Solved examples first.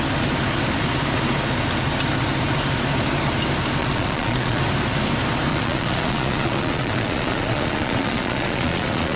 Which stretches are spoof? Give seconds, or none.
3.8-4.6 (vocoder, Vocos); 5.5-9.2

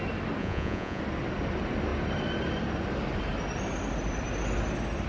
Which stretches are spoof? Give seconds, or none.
0.4-1.0 (vocoder, Vocos)

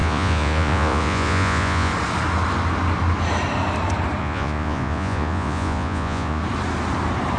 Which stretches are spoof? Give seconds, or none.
0.0-1.9 (vocoder, Vocos); 4.2-6.4

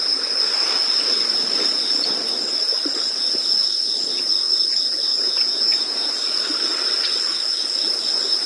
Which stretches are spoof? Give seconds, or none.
5.1-6.1 (vocoder, Vocos)

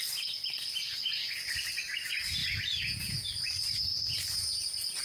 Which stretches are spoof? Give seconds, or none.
2.4-3.3 (vocoder, Vocos); 3.9-5.0

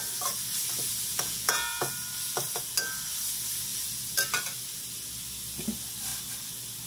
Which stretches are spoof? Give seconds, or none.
1.1-1.9 (vocoder, Vocos)